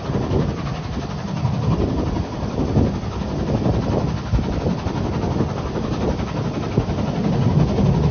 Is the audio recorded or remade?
recorded